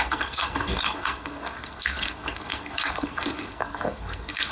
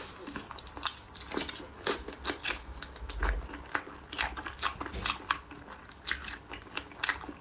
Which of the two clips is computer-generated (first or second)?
first